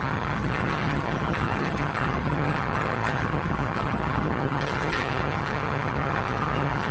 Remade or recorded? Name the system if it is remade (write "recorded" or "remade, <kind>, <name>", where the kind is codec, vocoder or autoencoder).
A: remade, vocoder, HiFi-GAN